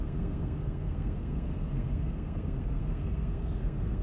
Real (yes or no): no